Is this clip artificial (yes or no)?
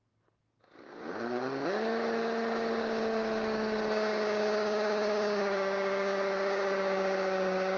yes